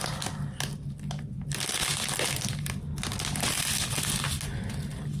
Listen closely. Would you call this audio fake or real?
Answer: real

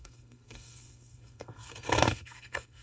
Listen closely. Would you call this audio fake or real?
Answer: fake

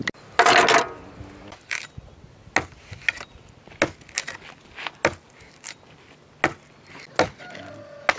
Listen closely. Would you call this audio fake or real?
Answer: real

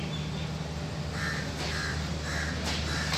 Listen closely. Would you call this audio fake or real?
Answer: real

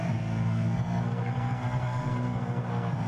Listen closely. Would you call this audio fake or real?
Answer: fake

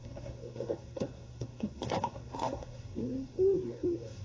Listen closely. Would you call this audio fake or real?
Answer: fake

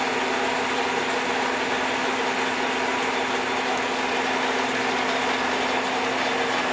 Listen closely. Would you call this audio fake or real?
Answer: real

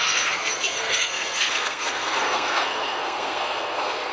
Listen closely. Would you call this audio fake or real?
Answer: fake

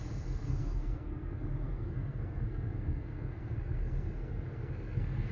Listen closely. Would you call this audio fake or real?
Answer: fake